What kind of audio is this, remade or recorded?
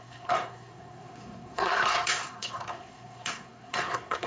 remade